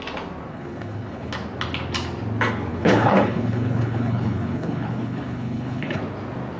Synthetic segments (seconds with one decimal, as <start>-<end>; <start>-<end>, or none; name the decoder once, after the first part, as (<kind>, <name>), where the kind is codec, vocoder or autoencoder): 0.5-1.3 (codec, HILCodec); 2.7-6.0